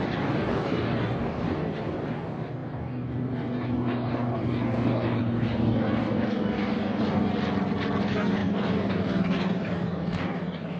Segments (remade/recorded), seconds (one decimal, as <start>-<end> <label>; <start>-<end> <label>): 0.0-7.3 remade; 7.3-8.0 recorded; 8.0-10.8 remade